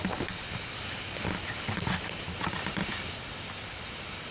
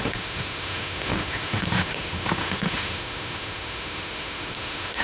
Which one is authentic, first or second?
first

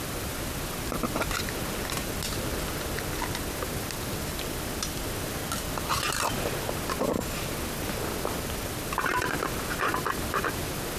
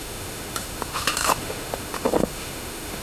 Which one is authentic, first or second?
first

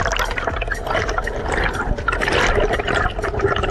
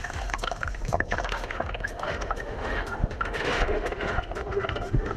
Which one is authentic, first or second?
first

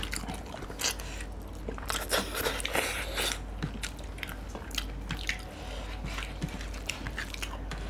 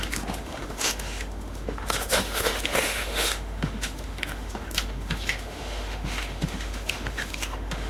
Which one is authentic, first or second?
first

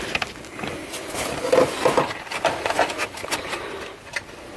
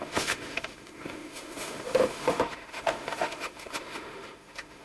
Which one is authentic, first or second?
first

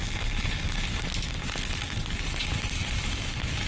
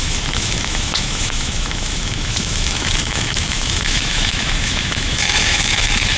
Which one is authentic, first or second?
first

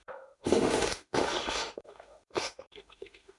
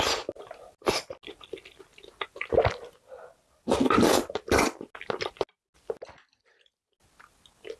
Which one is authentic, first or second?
second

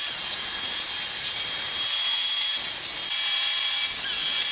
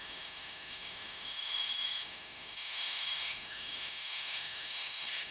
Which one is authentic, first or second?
first